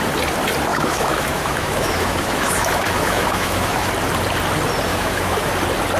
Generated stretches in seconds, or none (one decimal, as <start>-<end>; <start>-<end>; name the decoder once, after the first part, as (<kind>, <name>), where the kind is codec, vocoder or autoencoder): 0.7-3.9 (autoencoder, DAC-VAE); 4.9-5.5